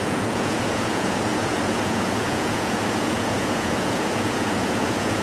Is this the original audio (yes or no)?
no